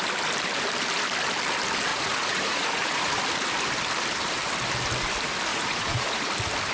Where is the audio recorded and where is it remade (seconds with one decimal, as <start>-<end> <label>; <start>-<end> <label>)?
0.0-1.9 recorded; 1.9-3.1 remade; 3.1-5.5 recorded; 5.5-6.3 remade; 6.3-6.7 recorded